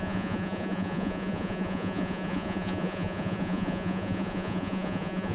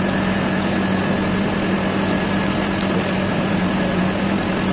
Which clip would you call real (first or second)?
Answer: second